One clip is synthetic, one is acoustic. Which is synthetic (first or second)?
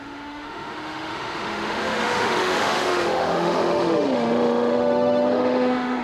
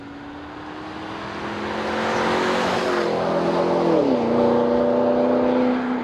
first